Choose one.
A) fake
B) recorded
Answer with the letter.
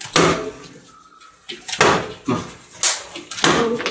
B